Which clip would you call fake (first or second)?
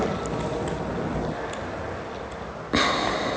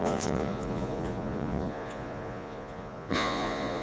second